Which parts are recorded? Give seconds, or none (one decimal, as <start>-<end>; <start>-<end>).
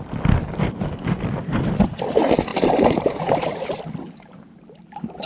0.0-2.5; 3.8-5.3